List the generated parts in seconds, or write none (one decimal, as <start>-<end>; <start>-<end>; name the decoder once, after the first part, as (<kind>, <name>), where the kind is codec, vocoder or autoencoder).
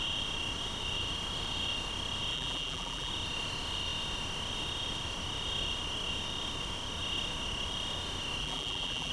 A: 2.3-3.1 (vocoder, BigVGAN v2); 8.4-9.1